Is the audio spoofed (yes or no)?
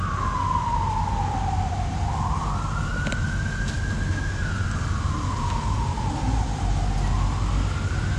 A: no